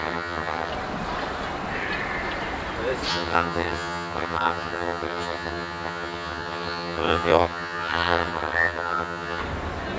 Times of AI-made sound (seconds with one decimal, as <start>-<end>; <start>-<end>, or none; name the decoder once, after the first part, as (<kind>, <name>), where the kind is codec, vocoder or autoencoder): 0.0-0.7 (vocoder, HiFi-GAN); 3.1-9.4